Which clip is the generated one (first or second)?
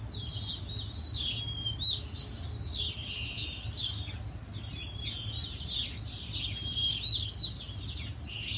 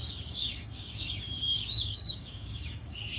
second